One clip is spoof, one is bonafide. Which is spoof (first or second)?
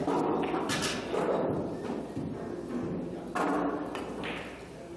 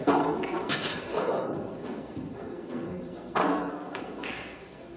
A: second